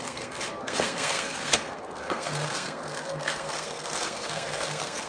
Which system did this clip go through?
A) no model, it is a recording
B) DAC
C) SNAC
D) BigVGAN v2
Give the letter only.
C